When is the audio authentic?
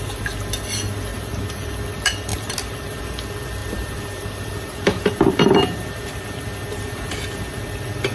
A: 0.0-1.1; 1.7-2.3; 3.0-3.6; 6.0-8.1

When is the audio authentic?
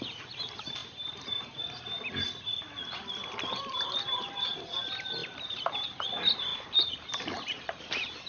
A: 0.0-0.8; 1.6-3.2; 4.3-5.2; 5.9-6.5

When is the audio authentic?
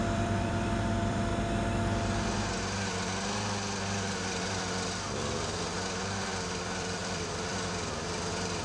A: 1.3-6.0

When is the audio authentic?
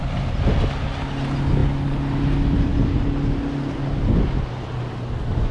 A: 0.0-5.5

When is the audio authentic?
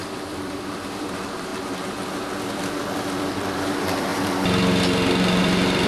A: 1.5-2.5; 4.1-5.4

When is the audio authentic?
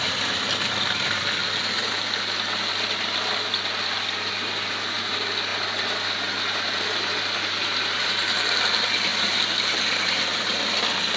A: 0.0-5.5; 6.1-11.2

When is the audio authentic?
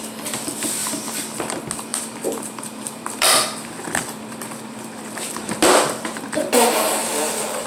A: 0.0-0.8; 1.4-1.9; 6.5-7.0